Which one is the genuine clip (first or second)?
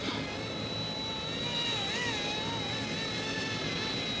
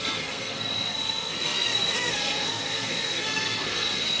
first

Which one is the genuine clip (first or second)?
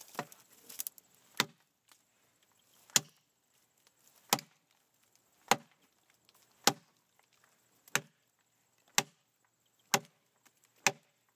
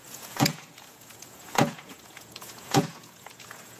first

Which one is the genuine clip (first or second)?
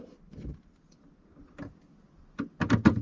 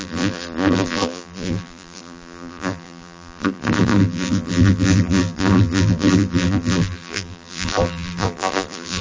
first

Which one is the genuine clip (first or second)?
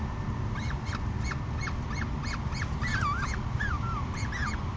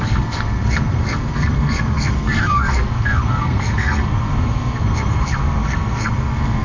first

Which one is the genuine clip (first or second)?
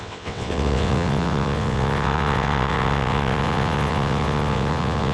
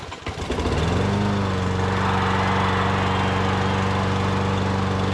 second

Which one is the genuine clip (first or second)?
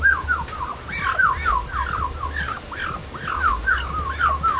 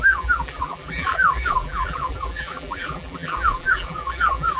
first